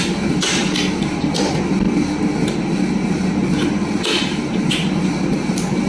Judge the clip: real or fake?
real